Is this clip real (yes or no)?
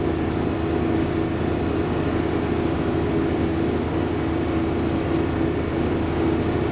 yes